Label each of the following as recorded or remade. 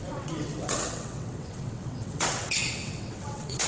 remade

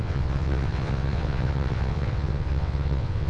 remade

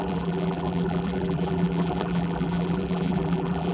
remade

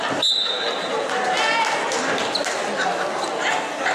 recorded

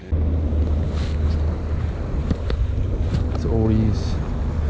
recorded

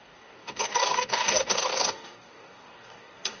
remade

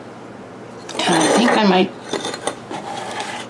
recorded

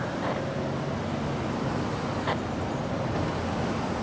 recorded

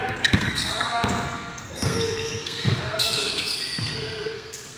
remade